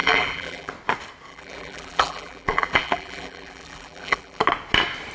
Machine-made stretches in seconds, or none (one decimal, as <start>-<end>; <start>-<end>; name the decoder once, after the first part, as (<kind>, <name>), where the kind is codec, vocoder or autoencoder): 0.0-0.7 (vocoder, BigVGAN v2); 1.3-4.4